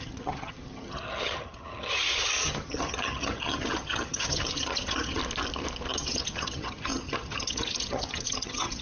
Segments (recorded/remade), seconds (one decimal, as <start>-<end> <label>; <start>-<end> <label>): 0.0-5.2 remade; 5.2-5.9 recorded; 5.9-8.8 remade

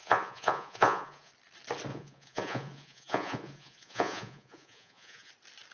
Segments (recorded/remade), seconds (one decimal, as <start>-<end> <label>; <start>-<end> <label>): 0.0-1.3 remade; 1.3-1.9 recorded; 1.9-5.3 remade; 5.3-5.7 recorded

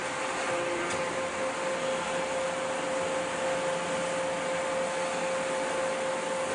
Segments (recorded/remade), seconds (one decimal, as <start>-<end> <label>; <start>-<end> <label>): 0.0-6.5 recorded